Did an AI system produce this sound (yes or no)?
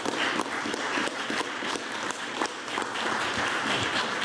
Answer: yes